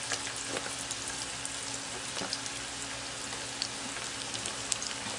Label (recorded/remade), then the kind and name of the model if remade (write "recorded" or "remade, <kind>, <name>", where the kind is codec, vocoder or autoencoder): recorded